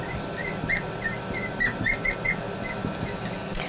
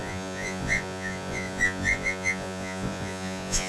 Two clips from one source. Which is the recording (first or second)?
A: first